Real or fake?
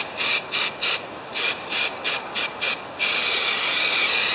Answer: real